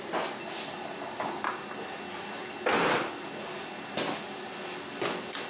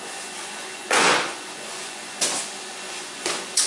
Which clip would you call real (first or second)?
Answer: first